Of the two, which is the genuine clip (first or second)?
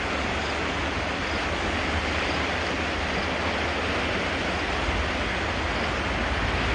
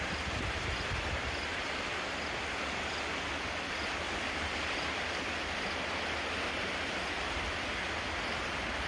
first